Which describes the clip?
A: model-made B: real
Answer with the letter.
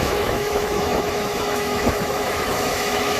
A